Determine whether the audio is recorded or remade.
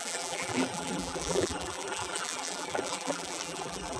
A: remade